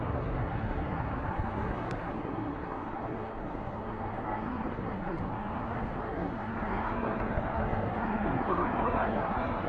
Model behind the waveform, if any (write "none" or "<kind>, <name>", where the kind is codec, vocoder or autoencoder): codec, SNAC